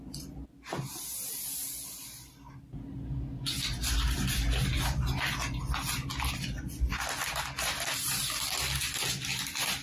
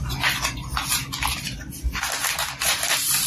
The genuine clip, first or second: first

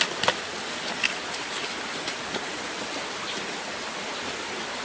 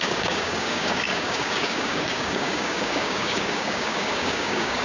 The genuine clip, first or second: first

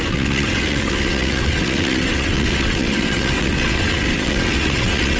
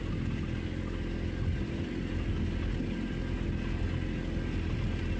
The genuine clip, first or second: second